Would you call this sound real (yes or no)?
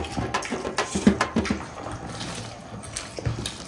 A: yes